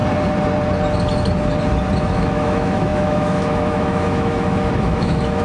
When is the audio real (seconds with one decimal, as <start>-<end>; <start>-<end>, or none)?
0.0-2.0